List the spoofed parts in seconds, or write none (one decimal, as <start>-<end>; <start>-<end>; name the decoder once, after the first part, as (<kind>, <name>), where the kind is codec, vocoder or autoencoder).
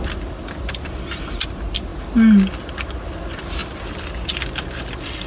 none